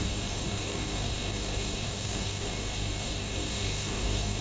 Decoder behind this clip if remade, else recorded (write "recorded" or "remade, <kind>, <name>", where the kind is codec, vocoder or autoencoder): remade, codec, DAC